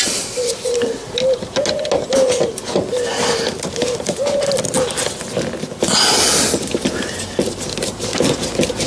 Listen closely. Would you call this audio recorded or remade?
recorded